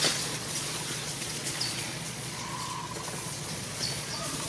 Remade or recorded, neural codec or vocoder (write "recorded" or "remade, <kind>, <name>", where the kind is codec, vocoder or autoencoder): remade, vocoder, Vocos